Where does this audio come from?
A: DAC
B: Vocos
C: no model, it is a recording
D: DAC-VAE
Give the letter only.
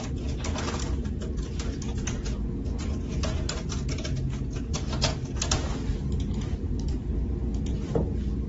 C